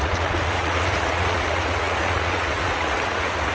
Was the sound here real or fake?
fake